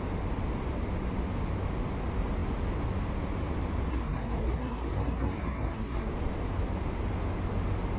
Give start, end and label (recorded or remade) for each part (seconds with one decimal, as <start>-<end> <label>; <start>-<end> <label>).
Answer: 0.0-3.9 recorded; 3.9-6.1 remade; 6.1-8.0 recorded